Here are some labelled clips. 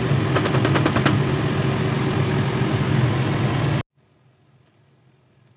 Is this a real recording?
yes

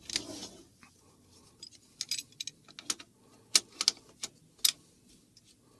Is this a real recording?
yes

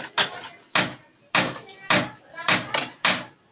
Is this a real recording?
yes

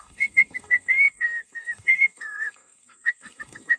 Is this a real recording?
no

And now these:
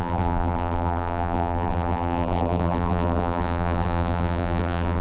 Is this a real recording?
no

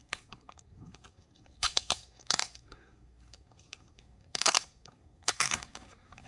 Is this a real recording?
no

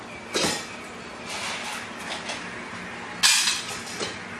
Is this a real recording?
yes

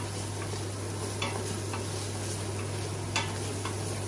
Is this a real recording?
yes